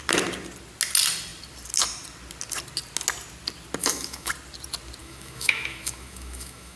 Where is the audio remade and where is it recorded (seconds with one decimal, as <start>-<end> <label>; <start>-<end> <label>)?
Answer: 0.0-3.8 recorded; 3.8-4.3 remade; 4.3-5.0 recorded; 5.0-6.8 remade

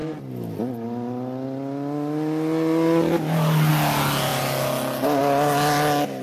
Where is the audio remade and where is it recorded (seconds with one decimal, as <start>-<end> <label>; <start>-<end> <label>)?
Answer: 0.0-6.2 recorded

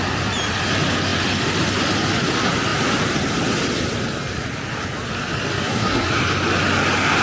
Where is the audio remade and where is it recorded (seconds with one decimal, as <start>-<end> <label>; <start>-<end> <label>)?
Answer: 0.0-5.5 recorded; 5.5-6.1 remade; 6.1-7.2 recorded

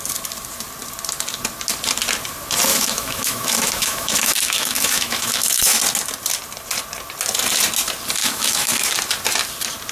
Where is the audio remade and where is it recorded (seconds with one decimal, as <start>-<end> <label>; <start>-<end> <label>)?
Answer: 0.0-2.7 recorded; 2.7-5.8 remade; 5.8-8.2 recorded; 8.2-8.9 remade; 8.9-9.9 recorded

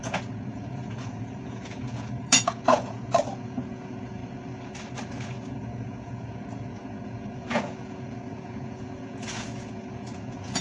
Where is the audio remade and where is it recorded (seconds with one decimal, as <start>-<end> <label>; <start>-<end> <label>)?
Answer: 0.0-4.2 remade; 4.2-5.5 recorded; 5.5-10.6 remade

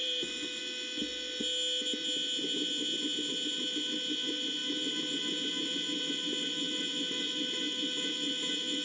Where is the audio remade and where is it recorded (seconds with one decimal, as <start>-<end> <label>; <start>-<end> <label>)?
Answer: 0.0-0.6 remade; 0.6-8.8 recorded